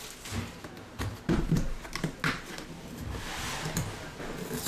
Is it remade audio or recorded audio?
recorded